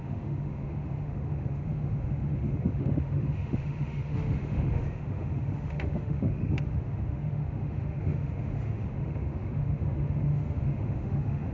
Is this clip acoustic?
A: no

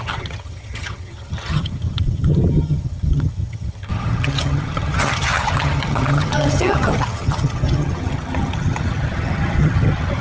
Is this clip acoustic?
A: no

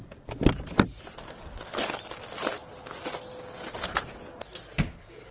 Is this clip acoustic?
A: yes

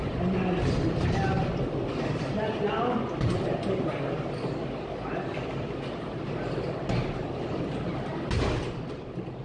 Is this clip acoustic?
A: yes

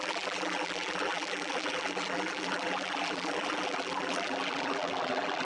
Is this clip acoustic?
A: no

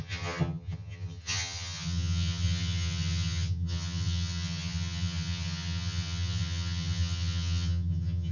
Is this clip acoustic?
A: no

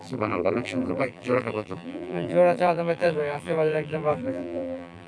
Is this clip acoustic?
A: no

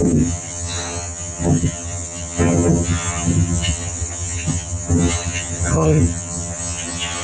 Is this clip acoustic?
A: no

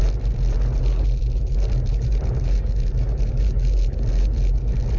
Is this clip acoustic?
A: yes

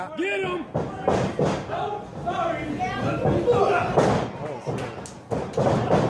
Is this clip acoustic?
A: yes